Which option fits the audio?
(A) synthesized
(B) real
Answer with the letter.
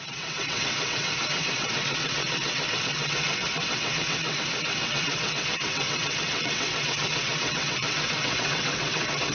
A